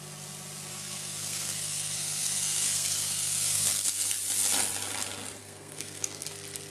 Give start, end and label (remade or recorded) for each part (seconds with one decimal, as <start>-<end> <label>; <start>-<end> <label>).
0.0-0.7 recorded; 0.7-4.1 remade; 4.1-5.4 recorded; 5.4-6.3 remade; 6.3-6.7 recorded